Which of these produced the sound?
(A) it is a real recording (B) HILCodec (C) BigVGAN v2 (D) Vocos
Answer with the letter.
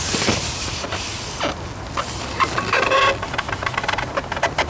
A